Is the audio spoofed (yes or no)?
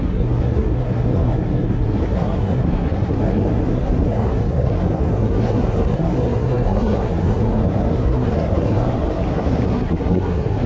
yes